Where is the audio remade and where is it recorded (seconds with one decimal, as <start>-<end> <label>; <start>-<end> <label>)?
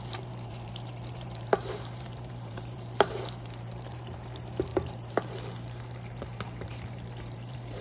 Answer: 0.0-7.8 remade